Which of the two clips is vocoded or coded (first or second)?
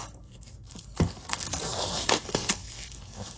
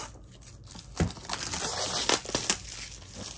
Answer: first